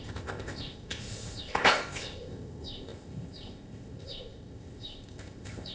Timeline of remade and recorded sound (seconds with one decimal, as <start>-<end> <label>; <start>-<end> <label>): 0.0-5.7 remade